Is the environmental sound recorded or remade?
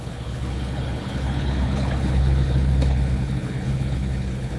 remade